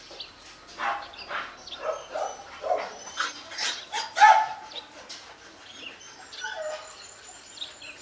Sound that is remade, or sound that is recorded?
recorded